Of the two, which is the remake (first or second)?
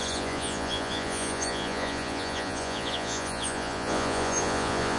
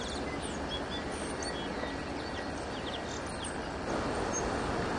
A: first